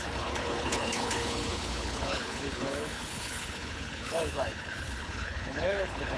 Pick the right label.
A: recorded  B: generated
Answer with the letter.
B